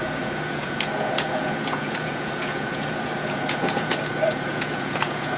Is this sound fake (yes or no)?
yes